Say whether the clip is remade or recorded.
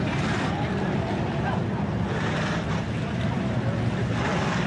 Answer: remade